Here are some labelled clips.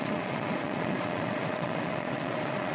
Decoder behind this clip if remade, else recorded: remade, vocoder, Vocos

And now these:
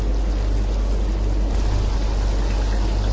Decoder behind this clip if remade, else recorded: recorded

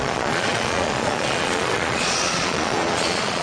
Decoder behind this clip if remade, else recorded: remade, vocoder, Vocos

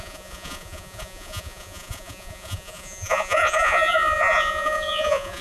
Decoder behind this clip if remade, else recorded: remade, vocoder, Vocos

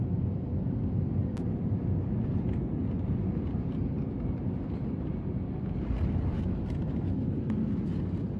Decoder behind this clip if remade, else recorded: recorded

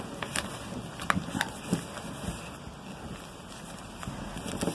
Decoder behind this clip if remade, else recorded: recorded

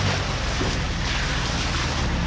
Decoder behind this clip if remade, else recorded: recorded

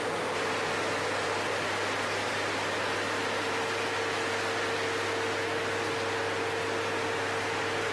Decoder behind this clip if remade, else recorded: recorded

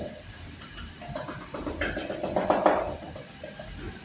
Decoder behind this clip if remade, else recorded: recorded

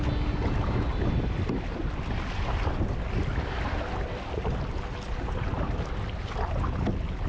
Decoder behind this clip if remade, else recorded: recorded